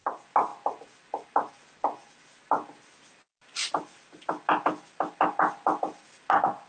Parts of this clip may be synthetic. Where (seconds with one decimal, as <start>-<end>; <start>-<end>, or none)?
none